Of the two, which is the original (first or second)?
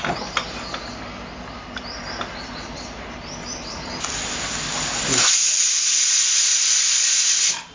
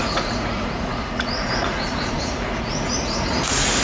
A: first